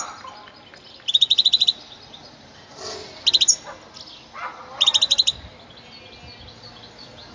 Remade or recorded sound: recorded